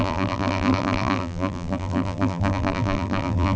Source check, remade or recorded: remade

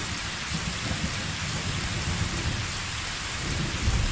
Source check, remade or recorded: remade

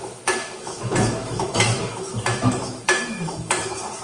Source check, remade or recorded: remade